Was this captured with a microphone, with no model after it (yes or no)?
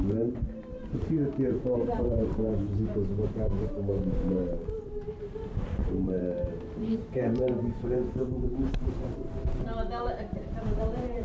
no